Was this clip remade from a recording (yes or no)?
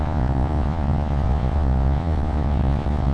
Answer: yes